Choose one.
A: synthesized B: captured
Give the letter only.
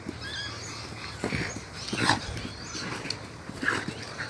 B